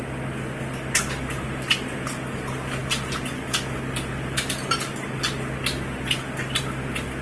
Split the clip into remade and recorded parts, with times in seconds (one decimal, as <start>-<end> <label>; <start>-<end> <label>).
0.0-7.2 recorded